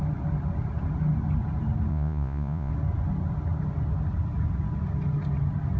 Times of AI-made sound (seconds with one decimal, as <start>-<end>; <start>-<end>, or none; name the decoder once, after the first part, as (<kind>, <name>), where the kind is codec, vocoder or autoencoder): 1.9-2.7 (vocoder, Vocos)